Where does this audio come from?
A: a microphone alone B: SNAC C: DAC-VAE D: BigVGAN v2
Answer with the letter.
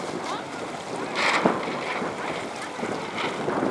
A